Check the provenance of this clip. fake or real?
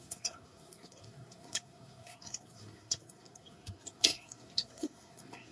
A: fake